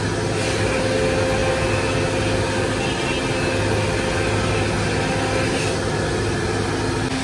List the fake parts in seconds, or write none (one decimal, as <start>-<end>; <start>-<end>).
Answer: none